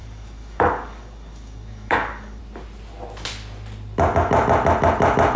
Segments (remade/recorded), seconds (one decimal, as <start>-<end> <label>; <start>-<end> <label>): 0.0-2.4 remade; 2.4-5.4 recorded